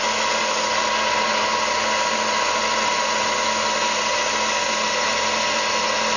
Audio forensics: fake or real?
real